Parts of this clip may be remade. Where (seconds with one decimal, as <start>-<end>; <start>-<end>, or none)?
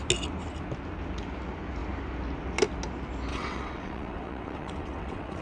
3.3-5.4